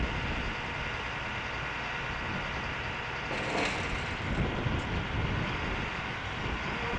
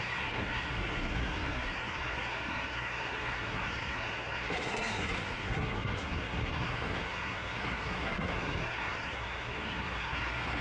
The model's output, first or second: second